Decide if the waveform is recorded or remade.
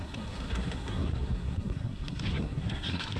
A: remade